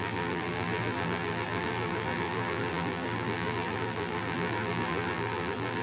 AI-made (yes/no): yes